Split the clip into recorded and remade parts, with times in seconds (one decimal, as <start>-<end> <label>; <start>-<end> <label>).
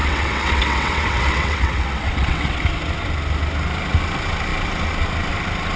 0.0-2.6 remade; 2.6-5.8 recorded